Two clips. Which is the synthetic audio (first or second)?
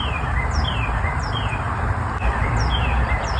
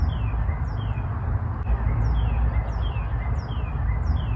first